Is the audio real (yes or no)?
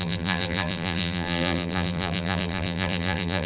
no